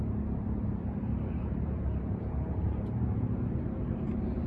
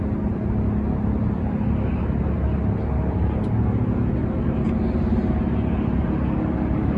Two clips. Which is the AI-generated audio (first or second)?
first